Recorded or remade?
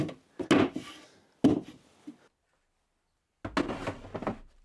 recorded